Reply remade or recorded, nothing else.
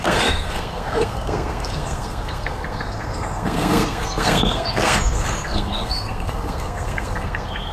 remade